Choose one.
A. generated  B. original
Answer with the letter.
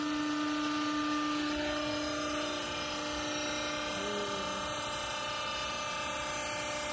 B